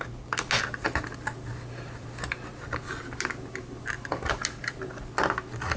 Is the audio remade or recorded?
recorded